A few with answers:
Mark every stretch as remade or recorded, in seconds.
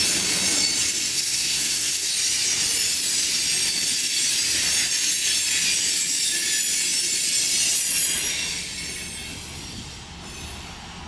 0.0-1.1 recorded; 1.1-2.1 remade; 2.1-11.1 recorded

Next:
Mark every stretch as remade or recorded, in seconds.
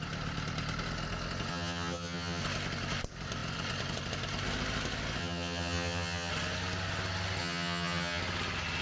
0.0-1.5 recorded; 1.5-2.4 remade; 2.4-5.2 recorded; 5.2-6.3 remade; 6.3-7.4 recorded; 7.4-8.2 remade; 8.2-8.8 recorded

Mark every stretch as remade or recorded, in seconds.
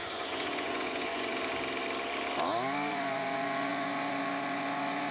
0.0-1.3 remade; 1.3-2.9 recorded; 2.9-5.1 remade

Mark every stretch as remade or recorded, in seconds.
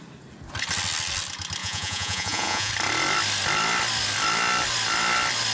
0.0-1.6 recorded; 1.6-2.7 remade; 2.7-5.5 recorded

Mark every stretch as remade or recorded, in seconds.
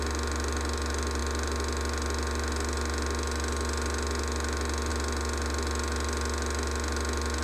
0.0-7.4 recorded